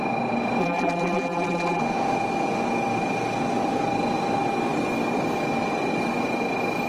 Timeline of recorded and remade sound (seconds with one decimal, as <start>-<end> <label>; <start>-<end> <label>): 0.0-0.6 recorded; 0.6-1.8 remade; 1.8-6.9 recorded